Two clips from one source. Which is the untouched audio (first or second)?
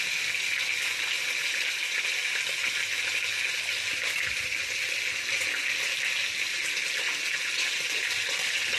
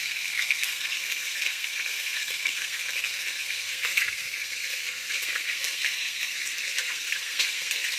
first